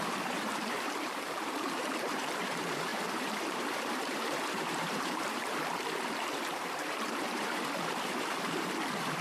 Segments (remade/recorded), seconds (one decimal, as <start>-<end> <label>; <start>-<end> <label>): 0.0-9.2 remade